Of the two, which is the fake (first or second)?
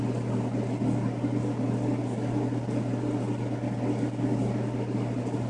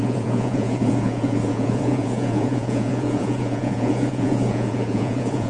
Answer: second